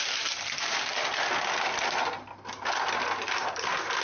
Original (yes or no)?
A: yes